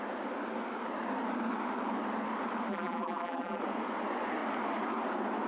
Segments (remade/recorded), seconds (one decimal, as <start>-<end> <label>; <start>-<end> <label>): 0.0-2.7 recorded; 2.7-3.6 remade; 3.6-5.5 recorded